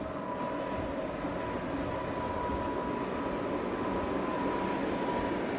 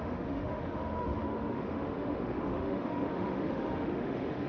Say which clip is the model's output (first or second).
second